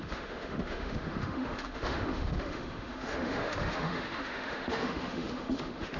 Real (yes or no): no